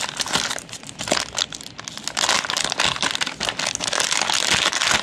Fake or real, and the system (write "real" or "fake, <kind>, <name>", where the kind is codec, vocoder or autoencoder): real